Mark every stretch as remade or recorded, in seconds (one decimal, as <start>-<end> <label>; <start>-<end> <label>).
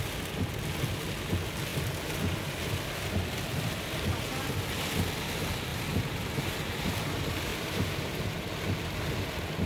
0.0-5.7 recorded; 5.7-6.9 remade; 6.9-7.5 recorded; 7.5-8.2 remade; 8.2-9.7 recorded